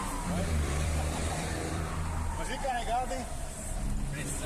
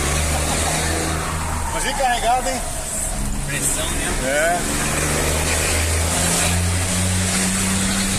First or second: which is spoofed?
first